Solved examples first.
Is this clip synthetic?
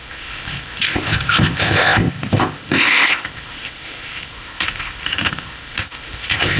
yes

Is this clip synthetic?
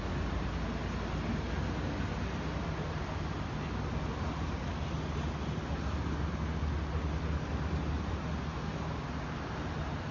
no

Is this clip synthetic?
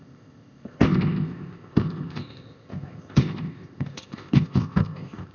yes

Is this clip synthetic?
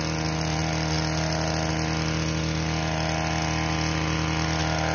no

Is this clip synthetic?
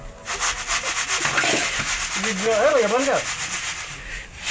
no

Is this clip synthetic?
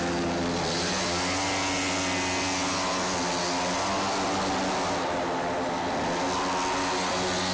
no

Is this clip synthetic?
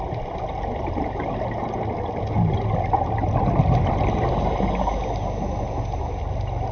no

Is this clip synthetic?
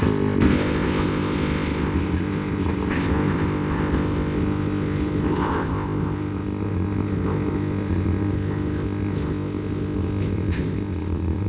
yes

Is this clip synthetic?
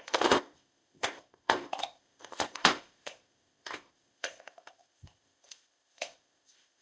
yes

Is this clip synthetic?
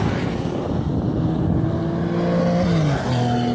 no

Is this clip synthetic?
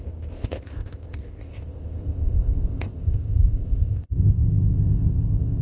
yes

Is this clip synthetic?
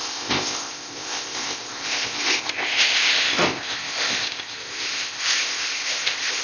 yes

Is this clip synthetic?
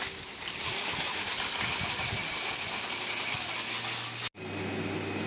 no